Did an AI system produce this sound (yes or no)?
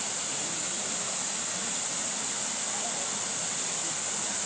no